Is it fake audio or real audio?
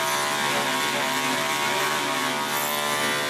real